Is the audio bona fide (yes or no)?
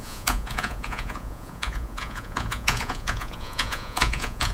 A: no